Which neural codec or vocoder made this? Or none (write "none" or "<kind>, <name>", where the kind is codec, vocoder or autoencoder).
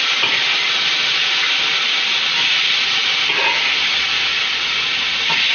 none